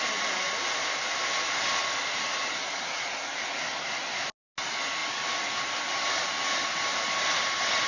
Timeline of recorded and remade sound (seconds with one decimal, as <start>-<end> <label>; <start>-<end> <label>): 0.0-7.9 recorded